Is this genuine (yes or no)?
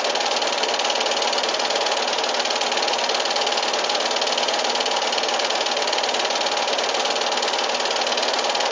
yes